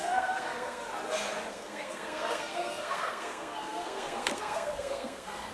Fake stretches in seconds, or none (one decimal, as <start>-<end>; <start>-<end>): 0.0-0.8; 1.5-5.5